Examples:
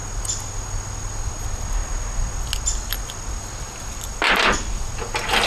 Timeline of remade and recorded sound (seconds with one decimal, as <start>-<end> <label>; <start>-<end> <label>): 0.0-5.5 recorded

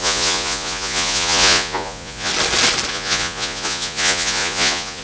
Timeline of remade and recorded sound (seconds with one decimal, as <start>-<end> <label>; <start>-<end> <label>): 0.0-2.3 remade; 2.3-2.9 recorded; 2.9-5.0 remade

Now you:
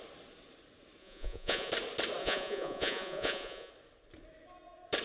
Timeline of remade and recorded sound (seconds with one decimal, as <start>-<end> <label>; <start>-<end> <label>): 0.0-1.0 recorded; 1.0-1.7 remade; 1.7-2.2 recorded; 2.2-3.7 remade; 3.7-5.0 recorded

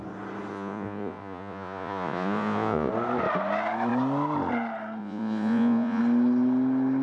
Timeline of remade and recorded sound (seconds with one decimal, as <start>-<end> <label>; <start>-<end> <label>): 0.0-0.5 recorded; 0.5-2.9 remade; 2.9-5.0 recorded; 5.0-6.0 remade; 6.0-7.0 recorded

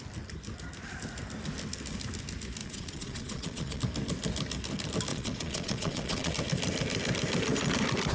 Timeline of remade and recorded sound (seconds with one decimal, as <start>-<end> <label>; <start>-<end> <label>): 0.0-2.6 recorded; 2.6-3.8 remade; 3.8-5.1 recorded; 5.1-6.3 remade; 6.3-8.1 recorded